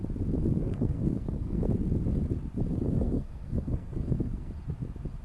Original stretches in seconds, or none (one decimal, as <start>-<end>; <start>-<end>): 0.0-0.6; 1.7-2.7; 4.5-5.2